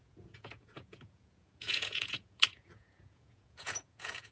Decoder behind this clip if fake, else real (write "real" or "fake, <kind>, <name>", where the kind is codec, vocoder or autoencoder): fake, vocoder, Vocos